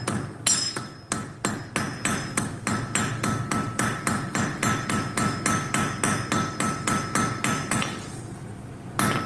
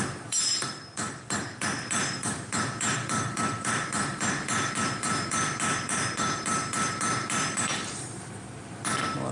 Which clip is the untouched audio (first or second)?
first